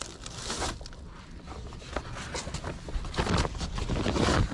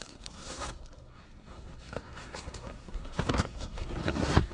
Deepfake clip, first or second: second